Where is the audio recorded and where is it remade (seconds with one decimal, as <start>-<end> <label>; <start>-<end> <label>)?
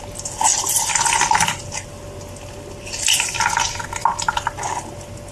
0.0-5.3 recorded